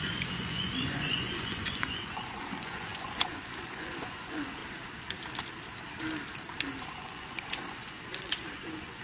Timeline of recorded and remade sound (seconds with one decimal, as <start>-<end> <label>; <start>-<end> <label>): 0.0-4.6 remade; 4.6-6.9 recorded; 6.9-9.0 remade